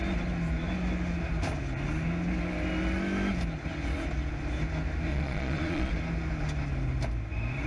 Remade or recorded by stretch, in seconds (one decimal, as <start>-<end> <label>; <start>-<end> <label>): 0.0-5.1 recorded; 5.1-5.9 remade; 5.9-7.7 recorded